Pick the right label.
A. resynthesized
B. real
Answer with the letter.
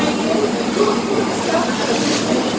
B